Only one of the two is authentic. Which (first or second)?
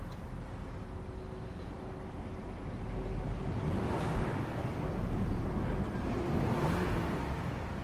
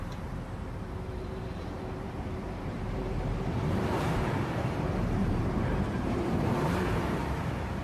first